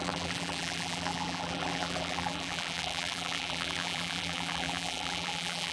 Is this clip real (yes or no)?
no